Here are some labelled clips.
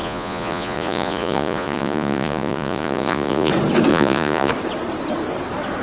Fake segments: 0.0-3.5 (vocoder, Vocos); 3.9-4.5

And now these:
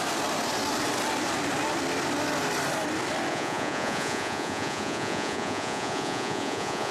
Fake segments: 3.3-6.9 (vocoder, Vocos)

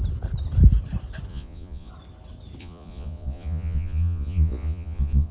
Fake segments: 1.3-1.9 (vocoder, Vocos); 2.6-5.3